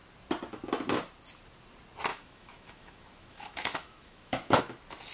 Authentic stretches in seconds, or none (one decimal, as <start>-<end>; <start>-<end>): 0.0-2.1; 4.6-5.1